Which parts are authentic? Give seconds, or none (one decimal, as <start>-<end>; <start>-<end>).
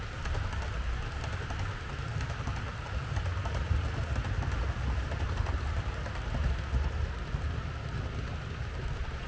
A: 0.0-9.3